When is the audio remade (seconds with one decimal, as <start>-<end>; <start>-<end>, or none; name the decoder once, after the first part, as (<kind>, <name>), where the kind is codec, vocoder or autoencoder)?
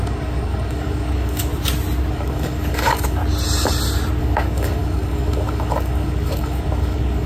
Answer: 0.0-1.5 (codec, DAC); 2.1-3.2; 4.2-7.3